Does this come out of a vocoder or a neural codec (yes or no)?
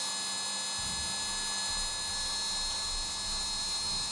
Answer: no